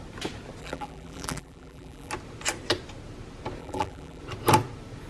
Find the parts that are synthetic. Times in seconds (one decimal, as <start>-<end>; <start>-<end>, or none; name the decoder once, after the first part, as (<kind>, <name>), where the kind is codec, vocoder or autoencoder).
0.6-2.1 (vocoder, BigVGAN v2); 3.6-4.2